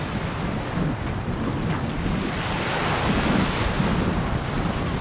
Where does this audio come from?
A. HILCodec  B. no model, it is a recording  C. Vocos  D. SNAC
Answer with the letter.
B